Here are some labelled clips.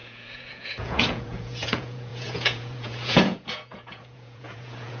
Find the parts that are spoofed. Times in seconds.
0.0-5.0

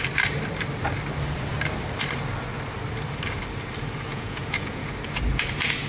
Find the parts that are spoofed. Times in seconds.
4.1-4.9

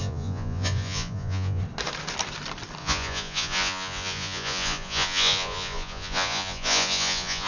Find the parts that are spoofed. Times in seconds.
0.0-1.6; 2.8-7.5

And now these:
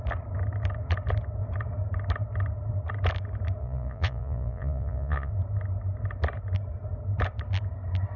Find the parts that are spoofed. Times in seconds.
3.6-5.3

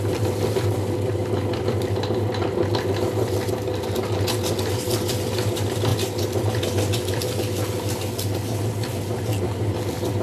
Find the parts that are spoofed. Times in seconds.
none